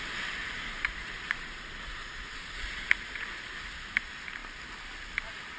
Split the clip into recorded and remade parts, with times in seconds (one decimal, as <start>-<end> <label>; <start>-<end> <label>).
0.0-0.4 recorded; 0.4-3.7 remade; 3.7-5.6 recorded